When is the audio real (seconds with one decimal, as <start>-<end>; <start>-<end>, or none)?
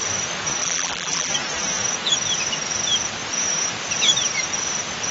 0.0-0.6; 1.3-5.1